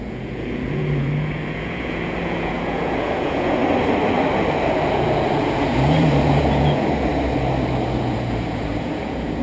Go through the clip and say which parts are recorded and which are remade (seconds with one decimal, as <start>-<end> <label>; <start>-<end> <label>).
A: 0.0-3.6 remade; 3.6-4.9 recorded; 4.9-7.1 remade; 7.1-7.9 recorded; 7.9-9.4 remade